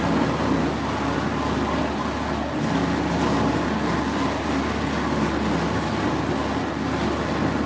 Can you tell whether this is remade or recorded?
recorded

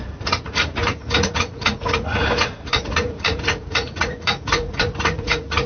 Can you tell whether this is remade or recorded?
remade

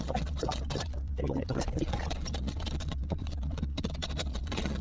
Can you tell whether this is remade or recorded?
remade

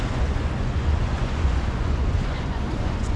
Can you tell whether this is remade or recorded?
remade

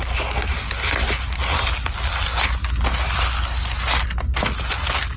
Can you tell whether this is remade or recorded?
recorded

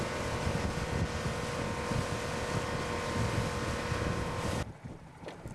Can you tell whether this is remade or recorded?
recorded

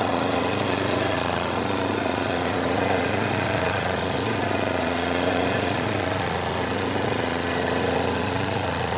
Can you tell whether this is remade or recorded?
remade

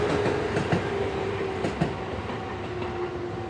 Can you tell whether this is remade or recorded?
recorded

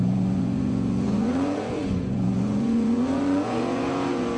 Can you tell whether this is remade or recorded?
remade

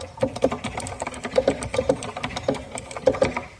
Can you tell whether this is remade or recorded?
recorded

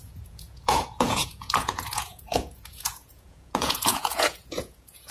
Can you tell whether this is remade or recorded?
remade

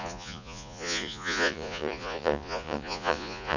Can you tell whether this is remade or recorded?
remade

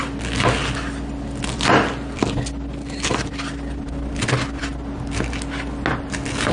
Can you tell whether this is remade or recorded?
recorded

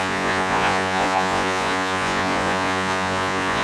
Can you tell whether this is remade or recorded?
remade